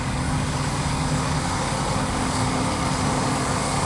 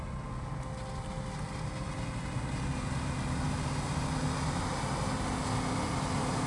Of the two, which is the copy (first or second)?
first